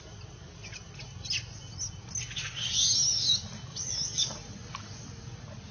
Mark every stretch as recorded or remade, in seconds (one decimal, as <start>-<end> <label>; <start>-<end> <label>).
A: 0.0-3.7 recorded; 3.7-5.7 remade